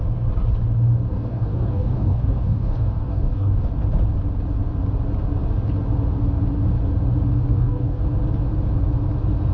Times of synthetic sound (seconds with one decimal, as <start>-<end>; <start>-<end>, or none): 1.1-3.6; 7.5-8.0